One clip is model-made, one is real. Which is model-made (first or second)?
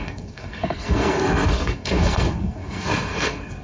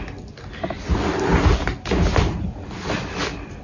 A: first